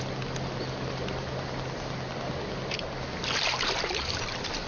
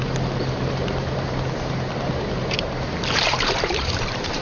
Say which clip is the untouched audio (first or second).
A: first